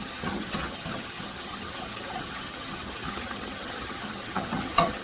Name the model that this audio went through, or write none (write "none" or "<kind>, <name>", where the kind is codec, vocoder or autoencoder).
vocoder, HiFi-GAN